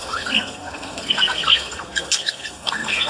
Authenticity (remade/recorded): remade